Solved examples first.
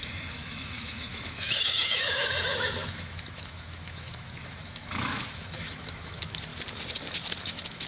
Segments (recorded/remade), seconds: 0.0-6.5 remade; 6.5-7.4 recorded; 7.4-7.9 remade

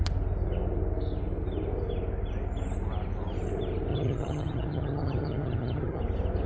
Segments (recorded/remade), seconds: 0.0-3.9 recorded; 3.9-6.0 remade; 6.0-6.5 recorded